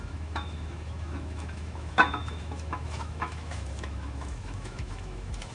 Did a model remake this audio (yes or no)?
yes